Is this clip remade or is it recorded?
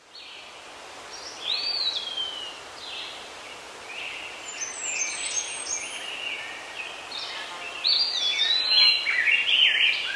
recorded